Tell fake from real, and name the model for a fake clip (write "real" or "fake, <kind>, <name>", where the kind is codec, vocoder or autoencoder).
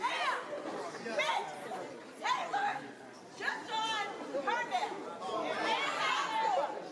real